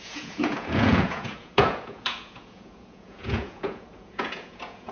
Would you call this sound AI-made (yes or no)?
yes